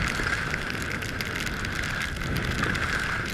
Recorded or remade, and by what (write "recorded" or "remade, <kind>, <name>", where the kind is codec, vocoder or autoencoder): recorded